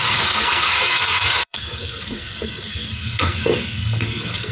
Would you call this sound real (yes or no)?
no